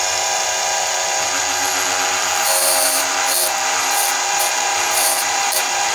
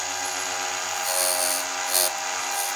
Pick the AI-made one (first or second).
first